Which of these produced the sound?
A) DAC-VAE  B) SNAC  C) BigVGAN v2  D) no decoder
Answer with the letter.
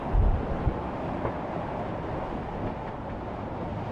D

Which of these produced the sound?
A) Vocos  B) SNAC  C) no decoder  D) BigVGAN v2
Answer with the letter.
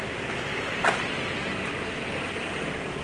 C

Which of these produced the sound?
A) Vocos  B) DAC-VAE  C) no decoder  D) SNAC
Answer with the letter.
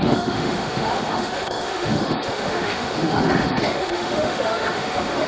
B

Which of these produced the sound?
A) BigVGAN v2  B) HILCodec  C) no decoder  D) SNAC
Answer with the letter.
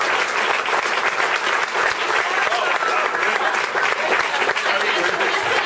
C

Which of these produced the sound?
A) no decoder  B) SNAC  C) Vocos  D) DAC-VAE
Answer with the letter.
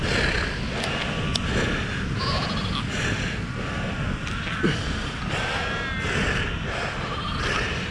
A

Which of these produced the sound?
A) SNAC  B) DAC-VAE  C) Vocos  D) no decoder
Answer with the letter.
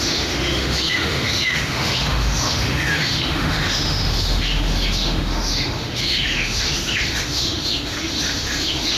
B